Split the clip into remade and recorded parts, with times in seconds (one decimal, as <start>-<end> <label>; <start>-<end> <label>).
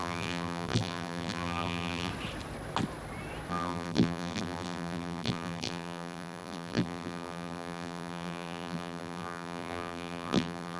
0.0-2.1 remade; 2.1-3.5 recorded; 3.5-10.8 remade